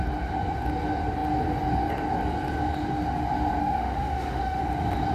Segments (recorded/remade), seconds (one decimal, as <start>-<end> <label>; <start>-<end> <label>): 0.0-3.6 recorded; 3.6-4.6 remade; 4.6-5.1 recorded